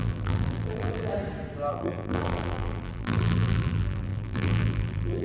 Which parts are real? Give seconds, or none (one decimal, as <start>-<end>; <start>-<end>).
1.1-1.7